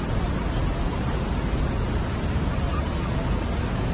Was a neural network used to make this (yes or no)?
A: no